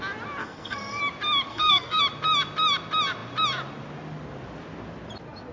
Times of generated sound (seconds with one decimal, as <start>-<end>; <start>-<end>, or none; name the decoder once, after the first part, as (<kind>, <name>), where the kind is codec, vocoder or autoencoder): 0.4-1.0 (codec, SNAC); 1.5-2.0